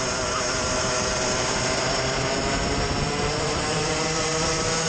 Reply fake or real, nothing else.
fake